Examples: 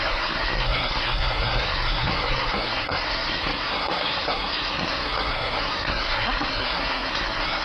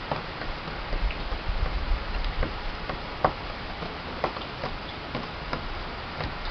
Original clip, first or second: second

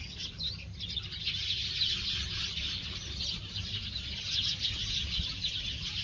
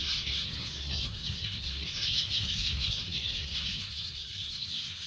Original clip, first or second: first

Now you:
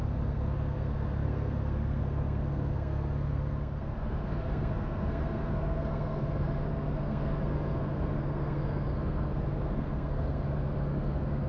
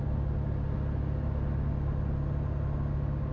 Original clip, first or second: second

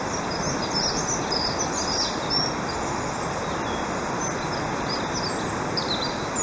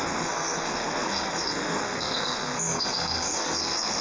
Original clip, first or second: first